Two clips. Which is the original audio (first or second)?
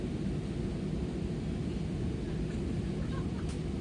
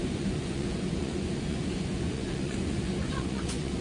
first